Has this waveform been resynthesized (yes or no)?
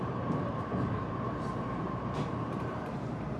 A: yes